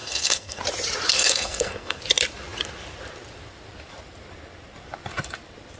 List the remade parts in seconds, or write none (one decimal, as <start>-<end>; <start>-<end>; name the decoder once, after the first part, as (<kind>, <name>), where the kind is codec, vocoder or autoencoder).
0.0-0.6 (codec, SNAC); 1.1-2.0